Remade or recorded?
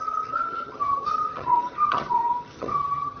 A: remade